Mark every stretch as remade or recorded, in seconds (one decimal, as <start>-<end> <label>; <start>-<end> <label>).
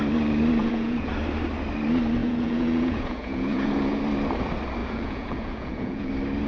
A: 0.0-0.6 recorded; 0.6-1.1 remade; 1.1-2.2 recorded; 2.2-4.0 remade; 4.0-4.8 recorded; 4.8-6.1 remade; 6.1-6.5 recorded